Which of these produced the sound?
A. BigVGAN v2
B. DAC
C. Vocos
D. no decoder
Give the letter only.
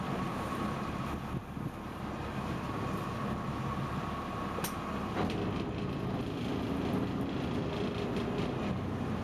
D